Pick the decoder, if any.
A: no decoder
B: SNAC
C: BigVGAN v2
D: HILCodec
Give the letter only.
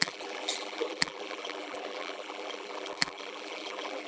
C